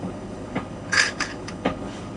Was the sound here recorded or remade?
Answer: remade